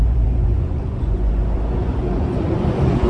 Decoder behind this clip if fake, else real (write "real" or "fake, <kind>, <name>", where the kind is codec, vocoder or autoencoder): fake, vocoder, Vocos